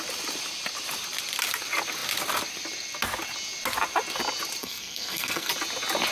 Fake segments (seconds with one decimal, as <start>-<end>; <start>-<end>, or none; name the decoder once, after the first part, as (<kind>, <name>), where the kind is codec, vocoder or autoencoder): 4.6-5.5 (codec, SNAC)